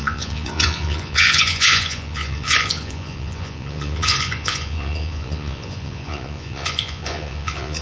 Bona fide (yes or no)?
no